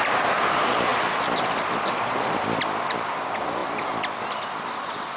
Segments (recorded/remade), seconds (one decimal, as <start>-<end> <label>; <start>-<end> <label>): 0.0-5.2 recorded